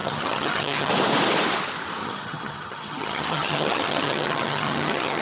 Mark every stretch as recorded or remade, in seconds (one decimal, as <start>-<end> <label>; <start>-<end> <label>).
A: 0.0-0.9 remade; 0.9-2.0 recorded; 2.0-5.2 remade